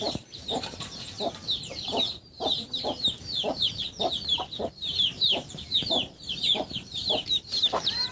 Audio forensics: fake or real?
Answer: fake